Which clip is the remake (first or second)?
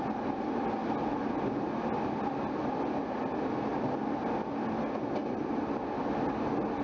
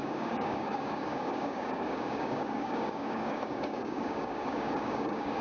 second